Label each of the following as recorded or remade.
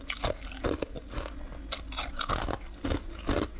recorded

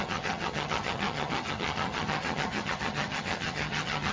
remade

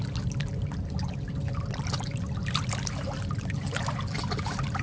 recorded